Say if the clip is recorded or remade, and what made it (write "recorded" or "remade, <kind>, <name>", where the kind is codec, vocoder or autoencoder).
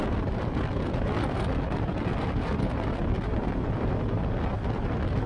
recorded